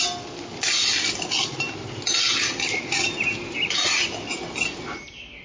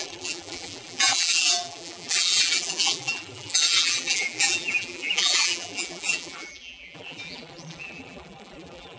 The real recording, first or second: first